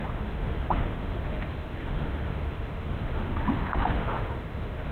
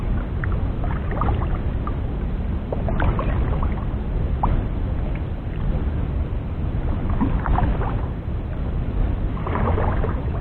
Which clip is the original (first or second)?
second